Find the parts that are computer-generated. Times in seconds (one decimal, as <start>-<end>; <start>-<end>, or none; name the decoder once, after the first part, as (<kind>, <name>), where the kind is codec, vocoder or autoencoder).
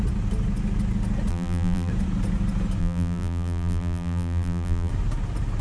1.3-1.9 (vocoder, BigVGAN v2); 2.8-4.9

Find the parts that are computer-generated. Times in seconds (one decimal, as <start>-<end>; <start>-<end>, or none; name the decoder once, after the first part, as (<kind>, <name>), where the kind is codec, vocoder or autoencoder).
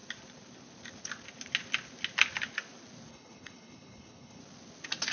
3.1-4.4 (codec, HILCodec)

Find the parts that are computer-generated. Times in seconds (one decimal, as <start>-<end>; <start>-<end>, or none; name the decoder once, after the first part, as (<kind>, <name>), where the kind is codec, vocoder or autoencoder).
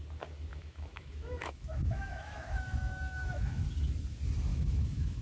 0.5-3.6 (autoencoder, DAC-VAE); 4.5-5.2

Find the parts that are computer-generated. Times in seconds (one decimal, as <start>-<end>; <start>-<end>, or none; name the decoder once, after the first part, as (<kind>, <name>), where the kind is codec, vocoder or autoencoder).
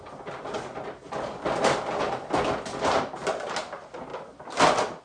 none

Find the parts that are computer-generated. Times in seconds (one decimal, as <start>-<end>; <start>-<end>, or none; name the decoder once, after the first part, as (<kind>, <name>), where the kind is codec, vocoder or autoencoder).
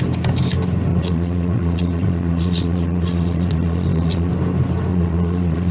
0.9-4.3 (vocoder, Vocos); 4.9-5.7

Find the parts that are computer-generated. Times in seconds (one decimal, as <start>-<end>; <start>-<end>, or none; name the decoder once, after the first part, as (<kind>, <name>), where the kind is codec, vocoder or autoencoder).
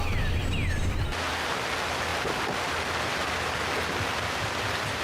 none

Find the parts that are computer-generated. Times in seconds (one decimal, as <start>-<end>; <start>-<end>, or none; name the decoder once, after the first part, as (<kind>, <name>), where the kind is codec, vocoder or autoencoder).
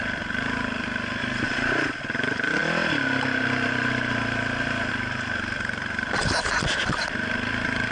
none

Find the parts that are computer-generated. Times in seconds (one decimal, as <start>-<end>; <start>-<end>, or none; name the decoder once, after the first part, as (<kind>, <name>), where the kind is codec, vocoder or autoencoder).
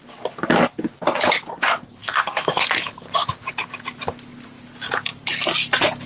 2.0-2.6 (codec, SNAC)